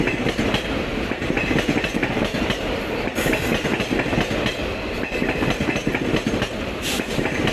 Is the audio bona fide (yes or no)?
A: yes